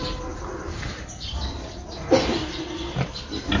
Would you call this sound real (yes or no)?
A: no